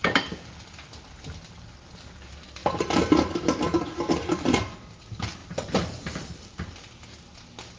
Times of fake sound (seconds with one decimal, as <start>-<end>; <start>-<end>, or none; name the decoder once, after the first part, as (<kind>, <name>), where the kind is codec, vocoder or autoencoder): 0.0-0.5 (vocoder, BigVGAN v2); 2.6-3.6; 5.4-6.9